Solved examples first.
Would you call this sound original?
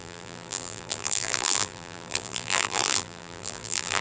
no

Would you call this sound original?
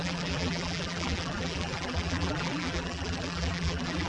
no